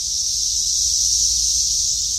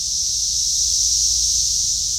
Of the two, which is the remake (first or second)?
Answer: first